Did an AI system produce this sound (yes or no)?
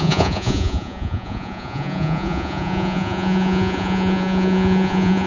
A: yes